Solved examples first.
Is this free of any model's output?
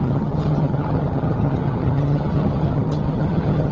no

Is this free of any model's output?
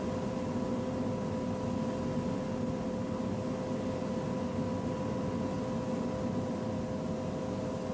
yes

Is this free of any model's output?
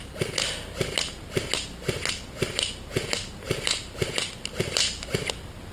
yes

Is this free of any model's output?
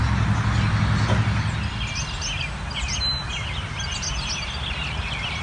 yes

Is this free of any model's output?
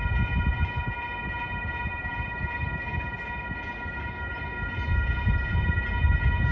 yes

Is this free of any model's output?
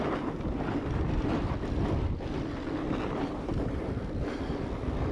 yes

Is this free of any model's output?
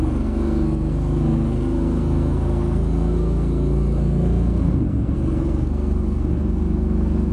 no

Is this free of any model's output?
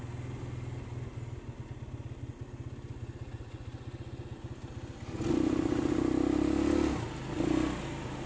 yes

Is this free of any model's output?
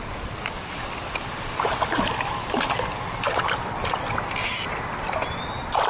yes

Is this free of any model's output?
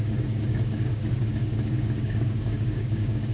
no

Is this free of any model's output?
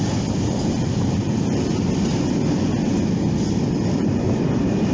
no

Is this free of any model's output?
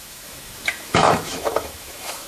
no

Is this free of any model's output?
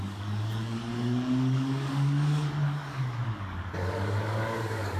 no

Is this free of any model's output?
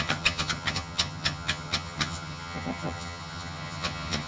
no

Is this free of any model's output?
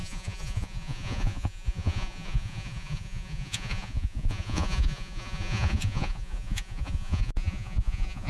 no